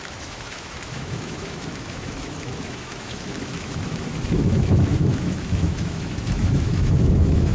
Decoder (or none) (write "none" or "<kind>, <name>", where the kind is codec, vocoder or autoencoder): autoencoder, DAC-VAE